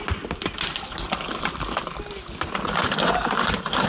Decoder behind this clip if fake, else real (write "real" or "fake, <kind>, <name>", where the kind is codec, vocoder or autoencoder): real